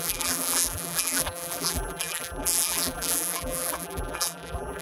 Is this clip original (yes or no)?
no